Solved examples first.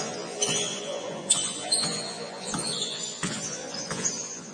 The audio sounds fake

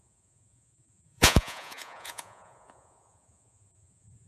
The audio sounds fake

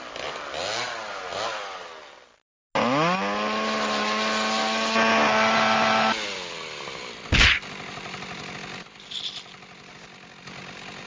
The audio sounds real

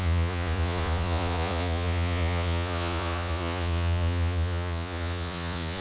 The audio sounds fake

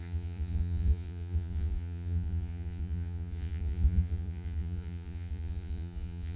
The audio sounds fake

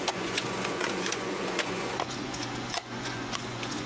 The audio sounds fake